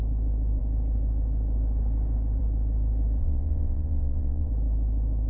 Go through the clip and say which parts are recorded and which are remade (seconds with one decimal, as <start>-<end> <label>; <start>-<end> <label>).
0.0-3.2 recorded; 3.2-4.5 remade; 4.5-5.3 recorded